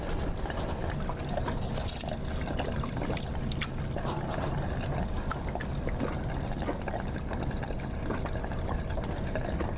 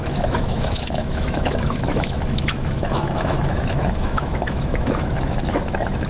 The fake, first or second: second